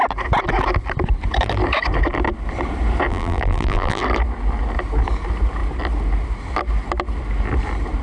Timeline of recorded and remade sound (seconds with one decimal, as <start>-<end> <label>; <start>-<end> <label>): 0.0-3.1 recorded; 3.1-4.0 remade; 4.0-8.0 recorded